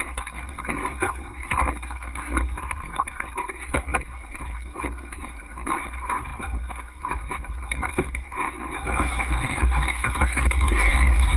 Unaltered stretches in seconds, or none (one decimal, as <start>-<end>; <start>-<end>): none